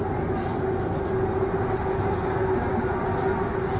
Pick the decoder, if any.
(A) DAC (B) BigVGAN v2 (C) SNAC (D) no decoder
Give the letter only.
D